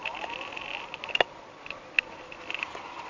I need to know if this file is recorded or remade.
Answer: recorded